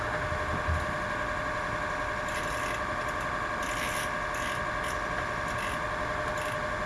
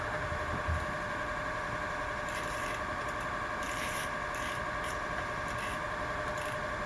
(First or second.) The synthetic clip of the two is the second